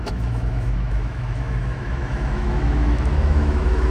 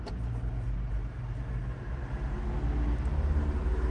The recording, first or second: second